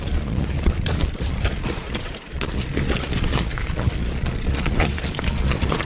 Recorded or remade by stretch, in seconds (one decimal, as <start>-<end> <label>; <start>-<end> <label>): 0.0-5.9 remade